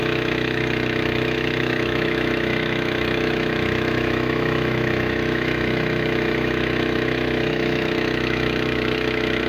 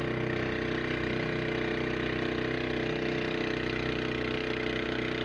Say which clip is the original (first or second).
second